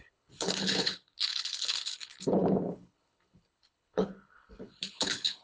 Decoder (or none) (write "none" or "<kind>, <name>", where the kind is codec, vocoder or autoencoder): codec, HILCodec